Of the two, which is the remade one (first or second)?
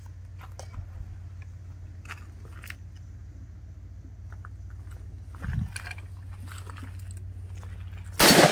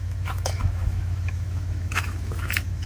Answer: second